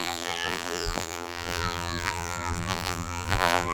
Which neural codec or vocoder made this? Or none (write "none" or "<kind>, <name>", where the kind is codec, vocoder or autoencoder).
vocoder, BigVGAN v2